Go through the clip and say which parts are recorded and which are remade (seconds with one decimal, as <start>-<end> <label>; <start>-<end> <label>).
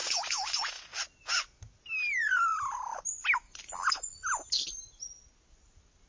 0.0-0.6 remade; 0.6-6.1 recorded